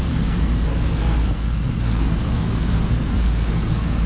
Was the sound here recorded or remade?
remade